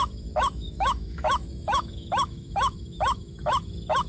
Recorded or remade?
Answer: remade